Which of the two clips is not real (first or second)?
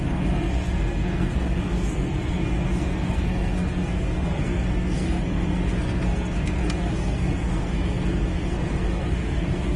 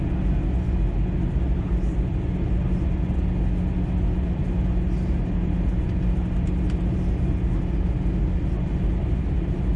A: first